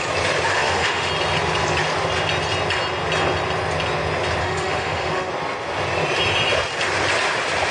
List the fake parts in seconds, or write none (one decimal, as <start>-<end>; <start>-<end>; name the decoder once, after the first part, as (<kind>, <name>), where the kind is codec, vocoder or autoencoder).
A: 0.5-1.1 (autoencoder, DAC-VAE); 4.4-5.3